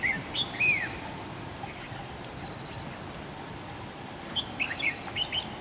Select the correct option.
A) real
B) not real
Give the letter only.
A